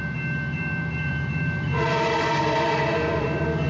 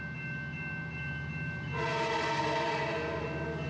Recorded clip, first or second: second